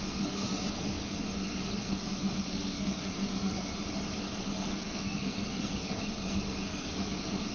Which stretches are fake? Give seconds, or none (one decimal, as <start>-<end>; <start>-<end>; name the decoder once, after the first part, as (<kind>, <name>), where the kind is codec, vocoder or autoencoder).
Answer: 0.0-3.7 (codec, SNAC); 4.2-7.5